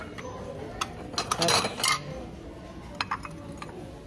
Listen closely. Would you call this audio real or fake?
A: real